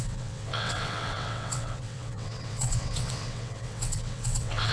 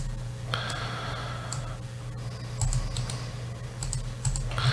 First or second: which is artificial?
first